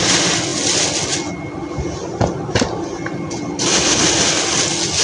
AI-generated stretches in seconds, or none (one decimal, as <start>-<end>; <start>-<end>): none